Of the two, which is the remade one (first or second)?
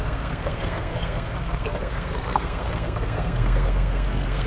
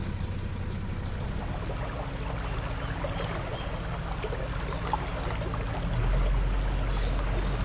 first